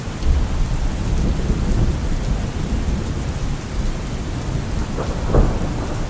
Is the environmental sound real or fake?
real